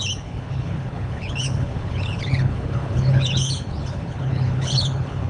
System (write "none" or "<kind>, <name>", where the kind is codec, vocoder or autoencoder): codec, HILCodec